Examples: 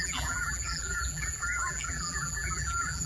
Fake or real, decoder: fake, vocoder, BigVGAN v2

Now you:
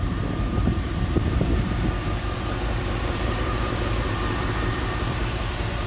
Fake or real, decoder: fake, vocoder, BigVGAN v2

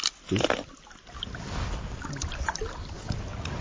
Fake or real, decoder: real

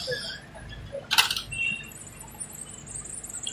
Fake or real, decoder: real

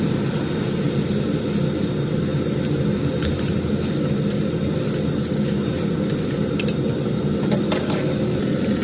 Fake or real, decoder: real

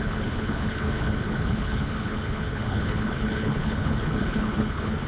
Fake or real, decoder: fake, codec, HILCodec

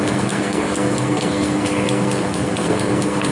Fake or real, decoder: fake, codec, SNAC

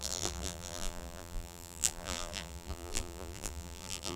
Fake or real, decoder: fake, vocoder, BigVGAN v2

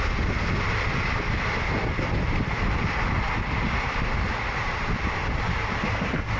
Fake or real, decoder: real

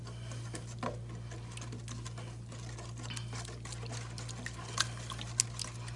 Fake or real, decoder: real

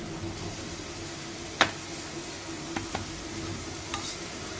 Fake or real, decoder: real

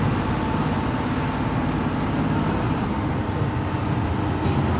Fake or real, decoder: real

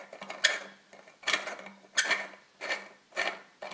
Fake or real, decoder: real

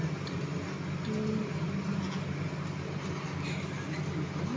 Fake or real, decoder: real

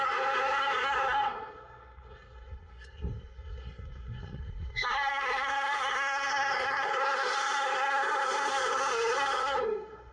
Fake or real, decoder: fake, codec, SNAC